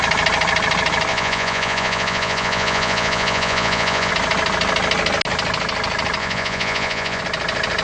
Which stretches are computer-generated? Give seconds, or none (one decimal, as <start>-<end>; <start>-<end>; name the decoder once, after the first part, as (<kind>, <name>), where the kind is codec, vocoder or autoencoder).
1.1-4.1 (vocoder, Vocos); 6.2-7.2